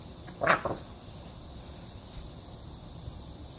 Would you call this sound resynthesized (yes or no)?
no